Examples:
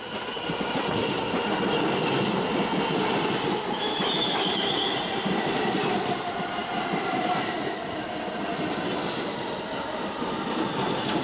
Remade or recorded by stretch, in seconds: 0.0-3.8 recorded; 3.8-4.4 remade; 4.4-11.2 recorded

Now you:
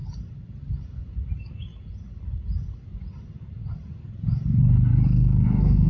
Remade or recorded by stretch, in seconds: 0.0-4.9 recorded; 4.9-5.9 remade

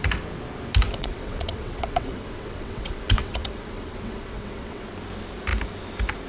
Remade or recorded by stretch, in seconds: 0.0-1.0 recorded; 1.0-4.8 remade; 4.8-6.3 recorded

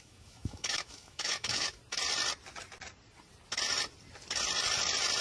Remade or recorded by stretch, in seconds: 0.0-1.8 remade; 1.8-5.2 recorded

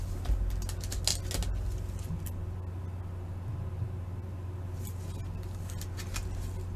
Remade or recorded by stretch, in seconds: 0.0-6.8 recorded

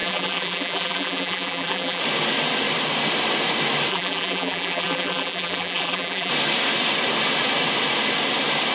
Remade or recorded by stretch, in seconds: 0.0-2.0 remade; 2.0-3.9 recorded; 3.9-6.3 remade; 6.3-8.7 recorded